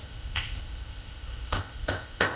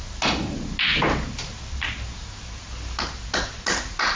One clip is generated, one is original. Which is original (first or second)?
second